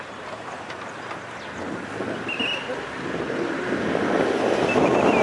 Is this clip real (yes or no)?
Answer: yes